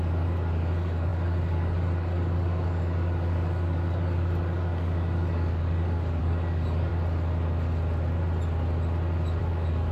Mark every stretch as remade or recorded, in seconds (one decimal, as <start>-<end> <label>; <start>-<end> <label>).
0.0-6.9 remade; 6.9-9.4 recorded; 9.4-9.9 remade